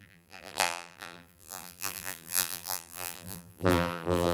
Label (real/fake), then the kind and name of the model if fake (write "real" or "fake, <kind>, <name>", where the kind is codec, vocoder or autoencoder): fake, vocoder, BigVGAN v2